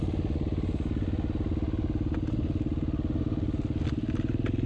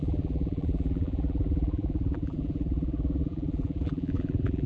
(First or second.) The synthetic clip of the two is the second